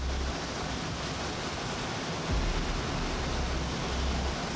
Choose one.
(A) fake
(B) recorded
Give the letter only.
B